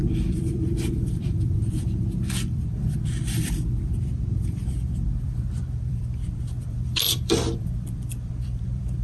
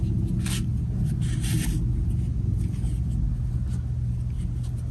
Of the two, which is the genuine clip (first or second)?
second